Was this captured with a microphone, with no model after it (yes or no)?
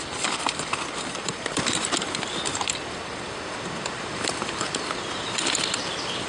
no